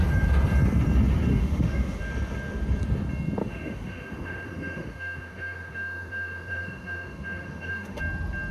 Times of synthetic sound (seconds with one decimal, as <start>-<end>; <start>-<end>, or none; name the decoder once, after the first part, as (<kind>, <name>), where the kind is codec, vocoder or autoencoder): 1.3-2.0 (autoencoder, DAC-VAE); 3.4-8.0